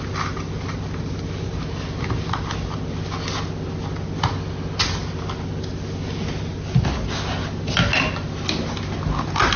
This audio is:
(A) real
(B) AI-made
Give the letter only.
A